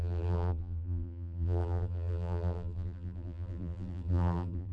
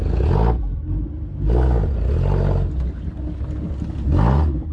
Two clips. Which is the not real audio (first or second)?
first